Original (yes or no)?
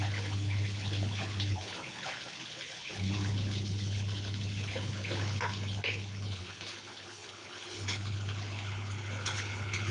no